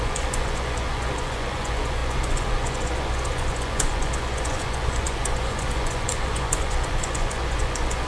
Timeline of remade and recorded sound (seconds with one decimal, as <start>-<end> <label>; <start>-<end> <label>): 0.0-8.1 remade